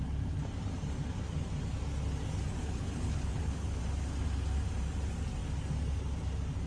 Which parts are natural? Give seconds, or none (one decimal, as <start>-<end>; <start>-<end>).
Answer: 0.0-2.6; 3.8-6.7